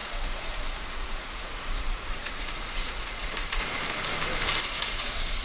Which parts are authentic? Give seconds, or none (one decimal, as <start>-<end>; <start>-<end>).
3.6-4.6

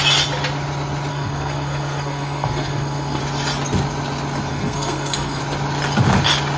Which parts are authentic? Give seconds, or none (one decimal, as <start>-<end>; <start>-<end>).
0.0-1.1; 3.2-4.5; 5.4-6.6

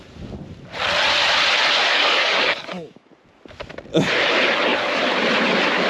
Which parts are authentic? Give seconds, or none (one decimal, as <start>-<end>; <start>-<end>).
0.0-1.8; 3.1-5.9

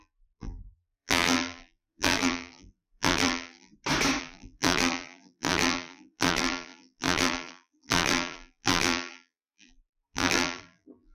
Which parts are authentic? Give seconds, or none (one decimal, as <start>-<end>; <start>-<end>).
3.7-4.2

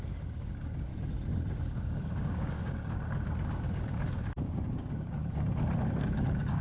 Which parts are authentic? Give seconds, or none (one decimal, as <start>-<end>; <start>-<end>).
0.9-1.6; 3.0-4.4; 5.2-6.0

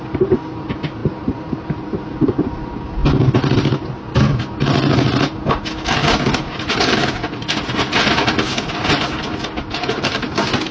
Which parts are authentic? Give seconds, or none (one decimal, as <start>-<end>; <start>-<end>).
0.0-1.0; 1.6-6.0; 7.6-10.7

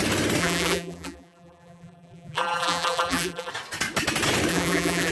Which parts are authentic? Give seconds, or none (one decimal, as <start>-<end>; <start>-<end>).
0.0-0.4; 3.5-4.5

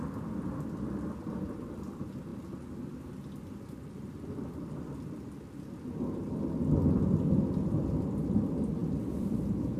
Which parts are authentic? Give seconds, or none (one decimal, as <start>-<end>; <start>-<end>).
0.0-9.8